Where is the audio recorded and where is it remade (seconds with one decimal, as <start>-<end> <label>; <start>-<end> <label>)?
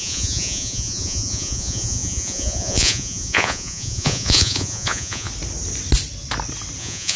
0.0-5.3 remade; 5.3-6.8 recorded; 6.8-7.2 remade